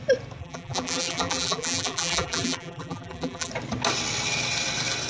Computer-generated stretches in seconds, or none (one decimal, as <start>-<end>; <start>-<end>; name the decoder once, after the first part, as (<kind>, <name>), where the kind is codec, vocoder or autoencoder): 0.4-3.5 (vocoder, BigVGAN v2)